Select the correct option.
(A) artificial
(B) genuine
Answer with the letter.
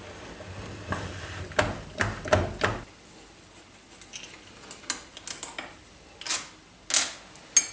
B